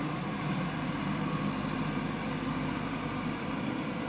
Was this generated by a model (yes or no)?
yes